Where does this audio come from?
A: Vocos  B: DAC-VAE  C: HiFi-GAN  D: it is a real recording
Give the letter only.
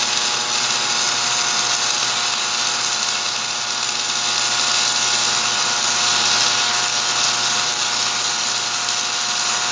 D